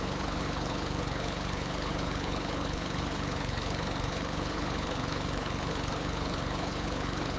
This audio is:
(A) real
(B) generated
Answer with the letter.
B